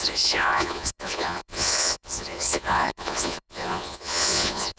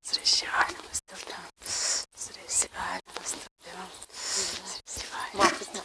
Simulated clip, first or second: first